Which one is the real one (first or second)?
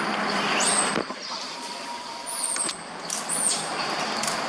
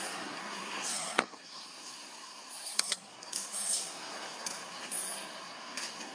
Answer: first